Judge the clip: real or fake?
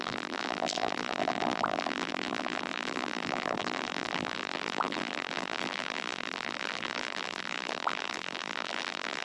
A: fake